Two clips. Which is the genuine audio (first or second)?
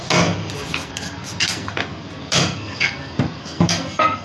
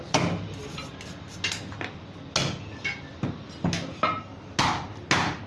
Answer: second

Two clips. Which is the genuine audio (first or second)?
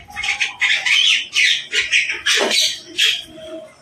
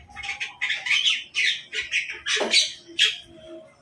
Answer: second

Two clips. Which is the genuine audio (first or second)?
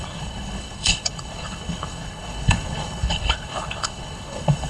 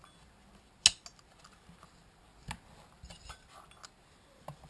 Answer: second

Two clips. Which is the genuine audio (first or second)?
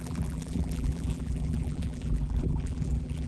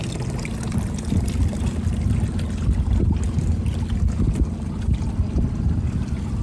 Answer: second